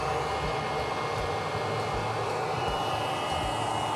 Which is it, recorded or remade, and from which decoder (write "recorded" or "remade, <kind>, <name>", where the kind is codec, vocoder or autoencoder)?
recorded